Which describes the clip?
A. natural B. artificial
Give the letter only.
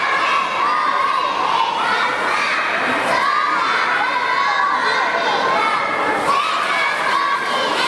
A